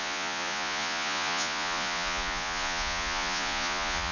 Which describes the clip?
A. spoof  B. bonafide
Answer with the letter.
A